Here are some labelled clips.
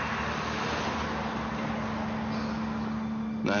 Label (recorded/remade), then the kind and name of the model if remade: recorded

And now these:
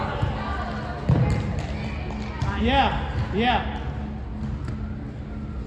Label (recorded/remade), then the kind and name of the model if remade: recorded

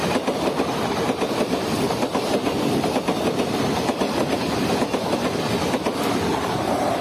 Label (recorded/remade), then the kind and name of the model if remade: recorded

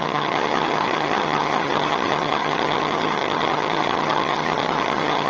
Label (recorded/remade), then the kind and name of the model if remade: remade, vocoder, HiFi-GAN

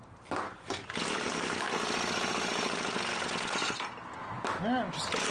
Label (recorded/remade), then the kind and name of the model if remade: recorded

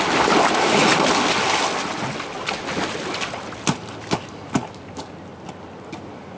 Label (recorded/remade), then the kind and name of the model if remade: recorded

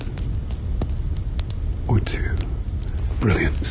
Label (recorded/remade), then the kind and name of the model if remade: recorded